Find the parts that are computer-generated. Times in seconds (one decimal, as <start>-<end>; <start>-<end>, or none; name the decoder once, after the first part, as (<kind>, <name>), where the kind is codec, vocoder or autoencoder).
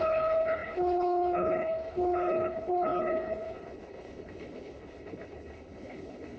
0.0-6.4 (codec, HILCodec)